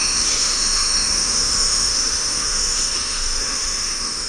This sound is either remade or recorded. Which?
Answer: remade